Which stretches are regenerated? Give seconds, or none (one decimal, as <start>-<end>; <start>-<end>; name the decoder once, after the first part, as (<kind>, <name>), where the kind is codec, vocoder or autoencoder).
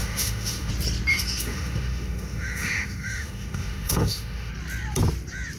0.0-0.7 (autoencoder, DAC-VAE); 1.1-4.5